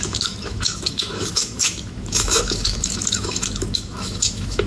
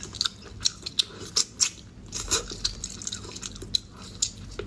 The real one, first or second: second